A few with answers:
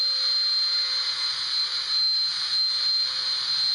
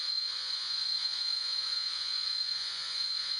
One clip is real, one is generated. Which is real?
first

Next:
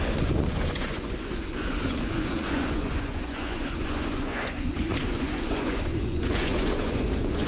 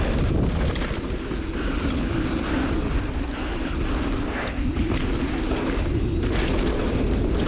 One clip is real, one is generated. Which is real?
second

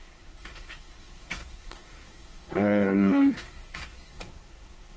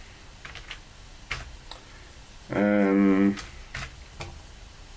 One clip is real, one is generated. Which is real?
second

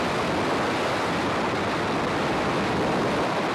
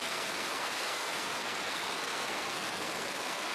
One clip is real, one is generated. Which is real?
first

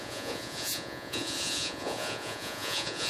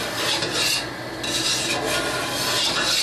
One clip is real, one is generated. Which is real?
second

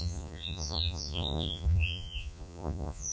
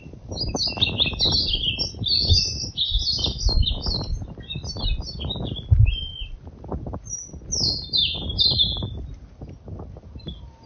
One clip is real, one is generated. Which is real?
second